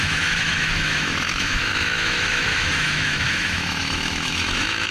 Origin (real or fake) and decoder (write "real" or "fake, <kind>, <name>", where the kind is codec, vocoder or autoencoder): fake, autoencoder, DAC-VAE